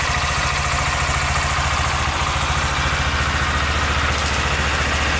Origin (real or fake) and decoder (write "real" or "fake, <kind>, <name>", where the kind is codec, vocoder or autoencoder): real